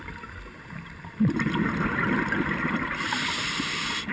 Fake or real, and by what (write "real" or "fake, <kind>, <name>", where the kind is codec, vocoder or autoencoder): real